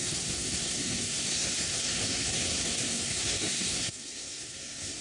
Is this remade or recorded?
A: remade